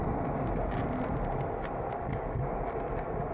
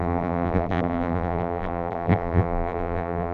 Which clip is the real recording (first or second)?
first